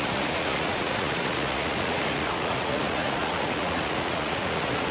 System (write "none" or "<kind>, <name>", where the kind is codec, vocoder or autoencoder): vocoder, Vocos